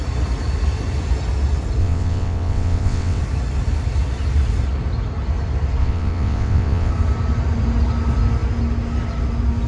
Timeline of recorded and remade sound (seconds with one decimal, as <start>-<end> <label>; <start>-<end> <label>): 0.0-1.8 recorded; 1.8-3.2 remade; 3.2-5.8 recorded; 5.8-6.9 remade; 6.9-9.7 recorded